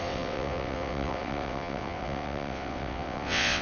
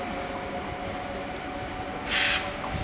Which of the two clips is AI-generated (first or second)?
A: first